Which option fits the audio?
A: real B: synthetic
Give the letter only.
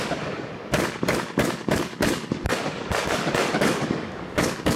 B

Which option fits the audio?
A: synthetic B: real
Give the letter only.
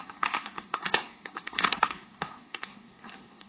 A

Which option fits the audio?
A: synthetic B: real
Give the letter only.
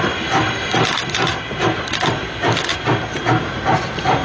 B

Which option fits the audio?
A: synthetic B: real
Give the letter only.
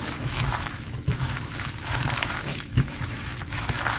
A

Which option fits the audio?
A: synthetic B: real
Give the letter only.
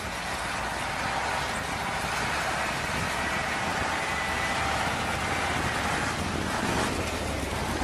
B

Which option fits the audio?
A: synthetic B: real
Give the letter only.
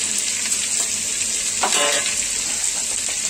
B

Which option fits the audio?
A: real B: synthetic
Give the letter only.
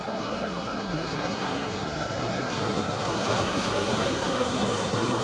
B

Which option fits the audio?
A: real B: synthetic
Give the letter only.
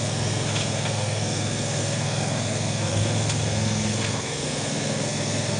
B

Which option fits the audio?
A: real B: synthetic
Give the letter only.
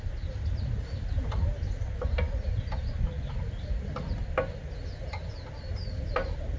A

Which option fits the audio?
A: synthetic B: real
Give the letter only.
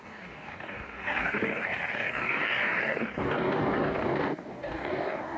A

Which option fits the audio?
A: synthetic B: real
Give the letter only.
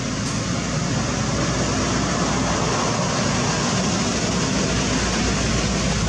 B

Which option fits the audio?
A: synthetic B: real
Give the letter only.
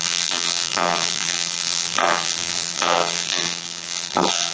A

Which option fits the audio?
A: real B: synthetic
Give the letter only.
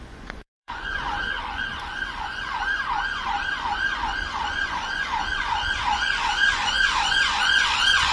B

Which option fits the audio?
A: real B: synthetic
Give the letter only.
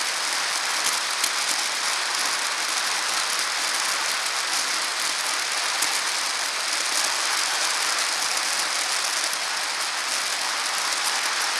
A